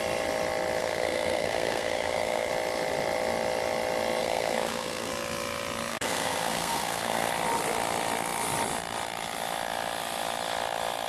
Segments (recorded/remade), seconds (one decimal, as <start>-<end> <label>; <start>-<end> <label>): 0.0-0.8 recorded; 0.8-2.5 remade; 2.5-4.2 recorded; 4.2-5.1 remade; 5.1-5.9 recorded; 5.9-7.3 remade; 7.3-11.1 recorded